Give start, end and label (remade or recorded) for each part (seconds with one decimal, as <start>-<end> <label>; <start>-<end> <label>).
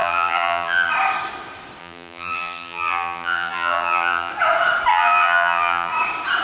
0.0-0.9 remade; 0.9-1.8 recorded; 1.8-4.3 remade; 4.3-4.9 recorded; 4.9-5.9 remade; 5.9-6.4 recorded